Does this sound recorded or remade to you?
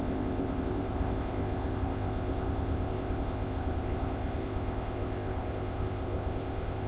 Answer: remade